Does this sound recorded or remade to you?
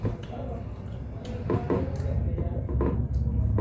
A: recorded